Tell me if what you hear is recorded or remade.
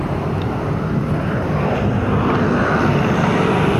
recorded